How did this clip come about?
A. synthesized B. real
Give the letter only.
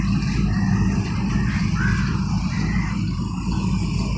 B